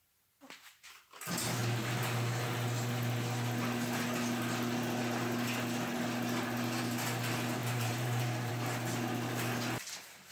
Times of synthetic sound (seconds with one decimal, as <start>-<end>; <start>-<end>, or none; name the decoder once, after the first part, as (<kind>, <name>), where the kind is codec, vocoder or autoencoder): 7.6-8.5 (vocoder, BigVGAN v2)